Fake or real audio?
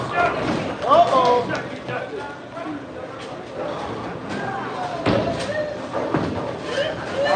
real